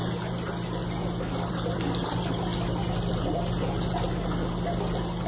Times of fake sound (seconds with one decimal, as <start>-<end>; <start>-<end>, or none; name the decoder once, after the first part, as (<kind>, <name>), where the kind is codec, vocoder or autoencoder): none